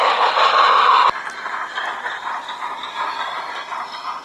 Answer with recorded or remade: recorded